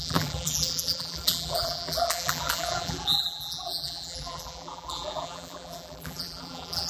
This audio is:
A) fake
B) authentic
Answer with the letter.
A